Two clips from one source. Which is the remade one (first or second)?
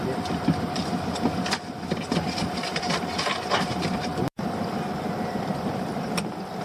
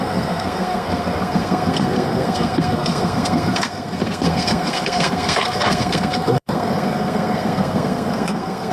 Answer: second